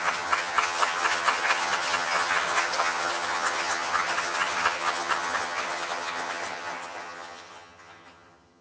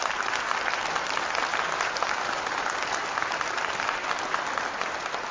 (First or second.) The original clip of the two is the second